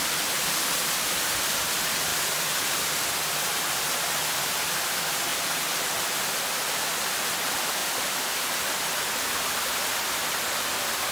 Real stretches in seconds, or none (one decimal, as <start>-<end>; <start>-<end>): 0.0-2.1; 3.2-7.8; 9.7-11.1